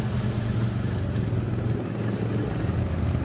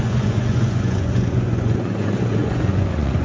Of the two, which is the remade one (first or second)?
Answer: second